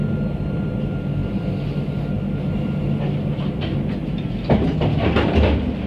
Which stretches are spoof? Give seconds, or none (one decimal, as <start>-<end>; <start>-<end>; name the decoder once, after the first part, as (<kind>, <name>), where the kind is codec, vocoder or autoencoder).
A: none